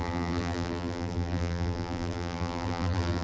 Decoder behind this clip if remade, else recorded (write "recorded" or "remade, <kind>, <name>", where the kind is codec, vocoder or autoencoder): remade, vocoder, BigVGAN v2